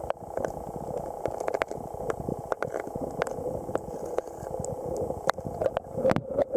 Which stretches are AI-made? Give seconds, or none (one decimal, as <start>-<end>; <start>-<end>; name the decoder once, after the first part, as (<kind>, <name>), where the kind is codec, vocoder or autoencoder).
none